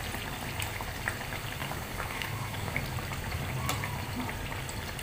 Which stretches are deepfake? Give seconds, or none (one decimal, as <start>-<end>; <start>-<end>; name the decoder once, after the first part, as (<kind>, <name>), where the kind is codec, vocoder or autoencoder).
1.6-2.8 (codec, DAC)